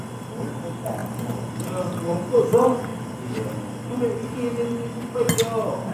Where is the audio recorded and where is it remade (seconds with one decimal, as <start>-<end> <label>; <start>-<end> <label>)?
0.0-2.9 remade; 2.9-5.9 recorded